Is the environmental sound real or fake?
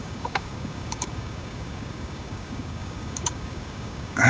fake